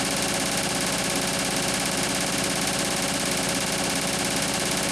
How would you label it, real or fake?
real